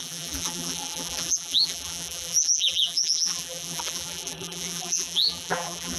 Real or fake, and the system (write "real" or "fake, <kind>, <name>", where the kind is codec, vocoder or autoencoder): fake, vocoder, BigVGAN v2